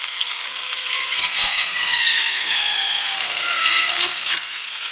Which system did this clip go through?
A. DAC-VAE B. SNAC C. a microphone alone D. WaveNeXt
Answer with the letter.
B